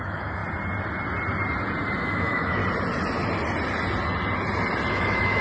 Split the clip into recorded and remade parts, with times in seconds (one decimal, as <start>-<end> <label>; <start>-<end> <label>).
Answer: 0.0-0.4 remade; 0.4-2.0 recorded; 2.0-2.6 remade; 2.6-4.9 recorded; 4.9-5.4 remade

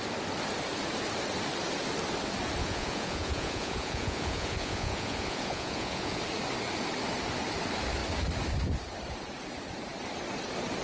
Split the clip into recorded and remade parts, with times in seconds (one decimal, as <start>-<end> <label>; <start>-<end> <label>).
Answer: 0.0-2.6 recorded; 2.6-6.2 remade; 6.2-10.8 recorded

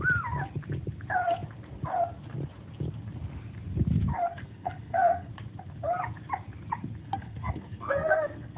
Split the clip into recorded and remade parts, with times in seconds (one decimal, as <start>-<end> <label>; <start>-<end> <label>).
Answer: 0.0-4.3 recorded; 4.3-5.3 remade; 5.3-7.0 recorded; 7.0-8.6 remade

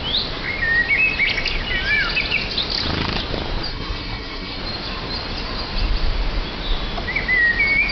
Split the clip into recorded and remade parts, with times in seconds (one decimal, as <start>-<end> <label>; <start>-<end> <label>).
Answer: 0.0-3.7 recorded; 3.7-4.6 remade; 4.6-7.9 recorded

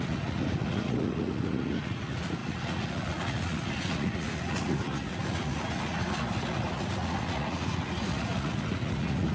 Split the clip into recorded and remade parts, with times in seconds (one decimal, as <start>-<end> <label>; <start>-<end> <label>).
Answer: 0.0-9.3 remade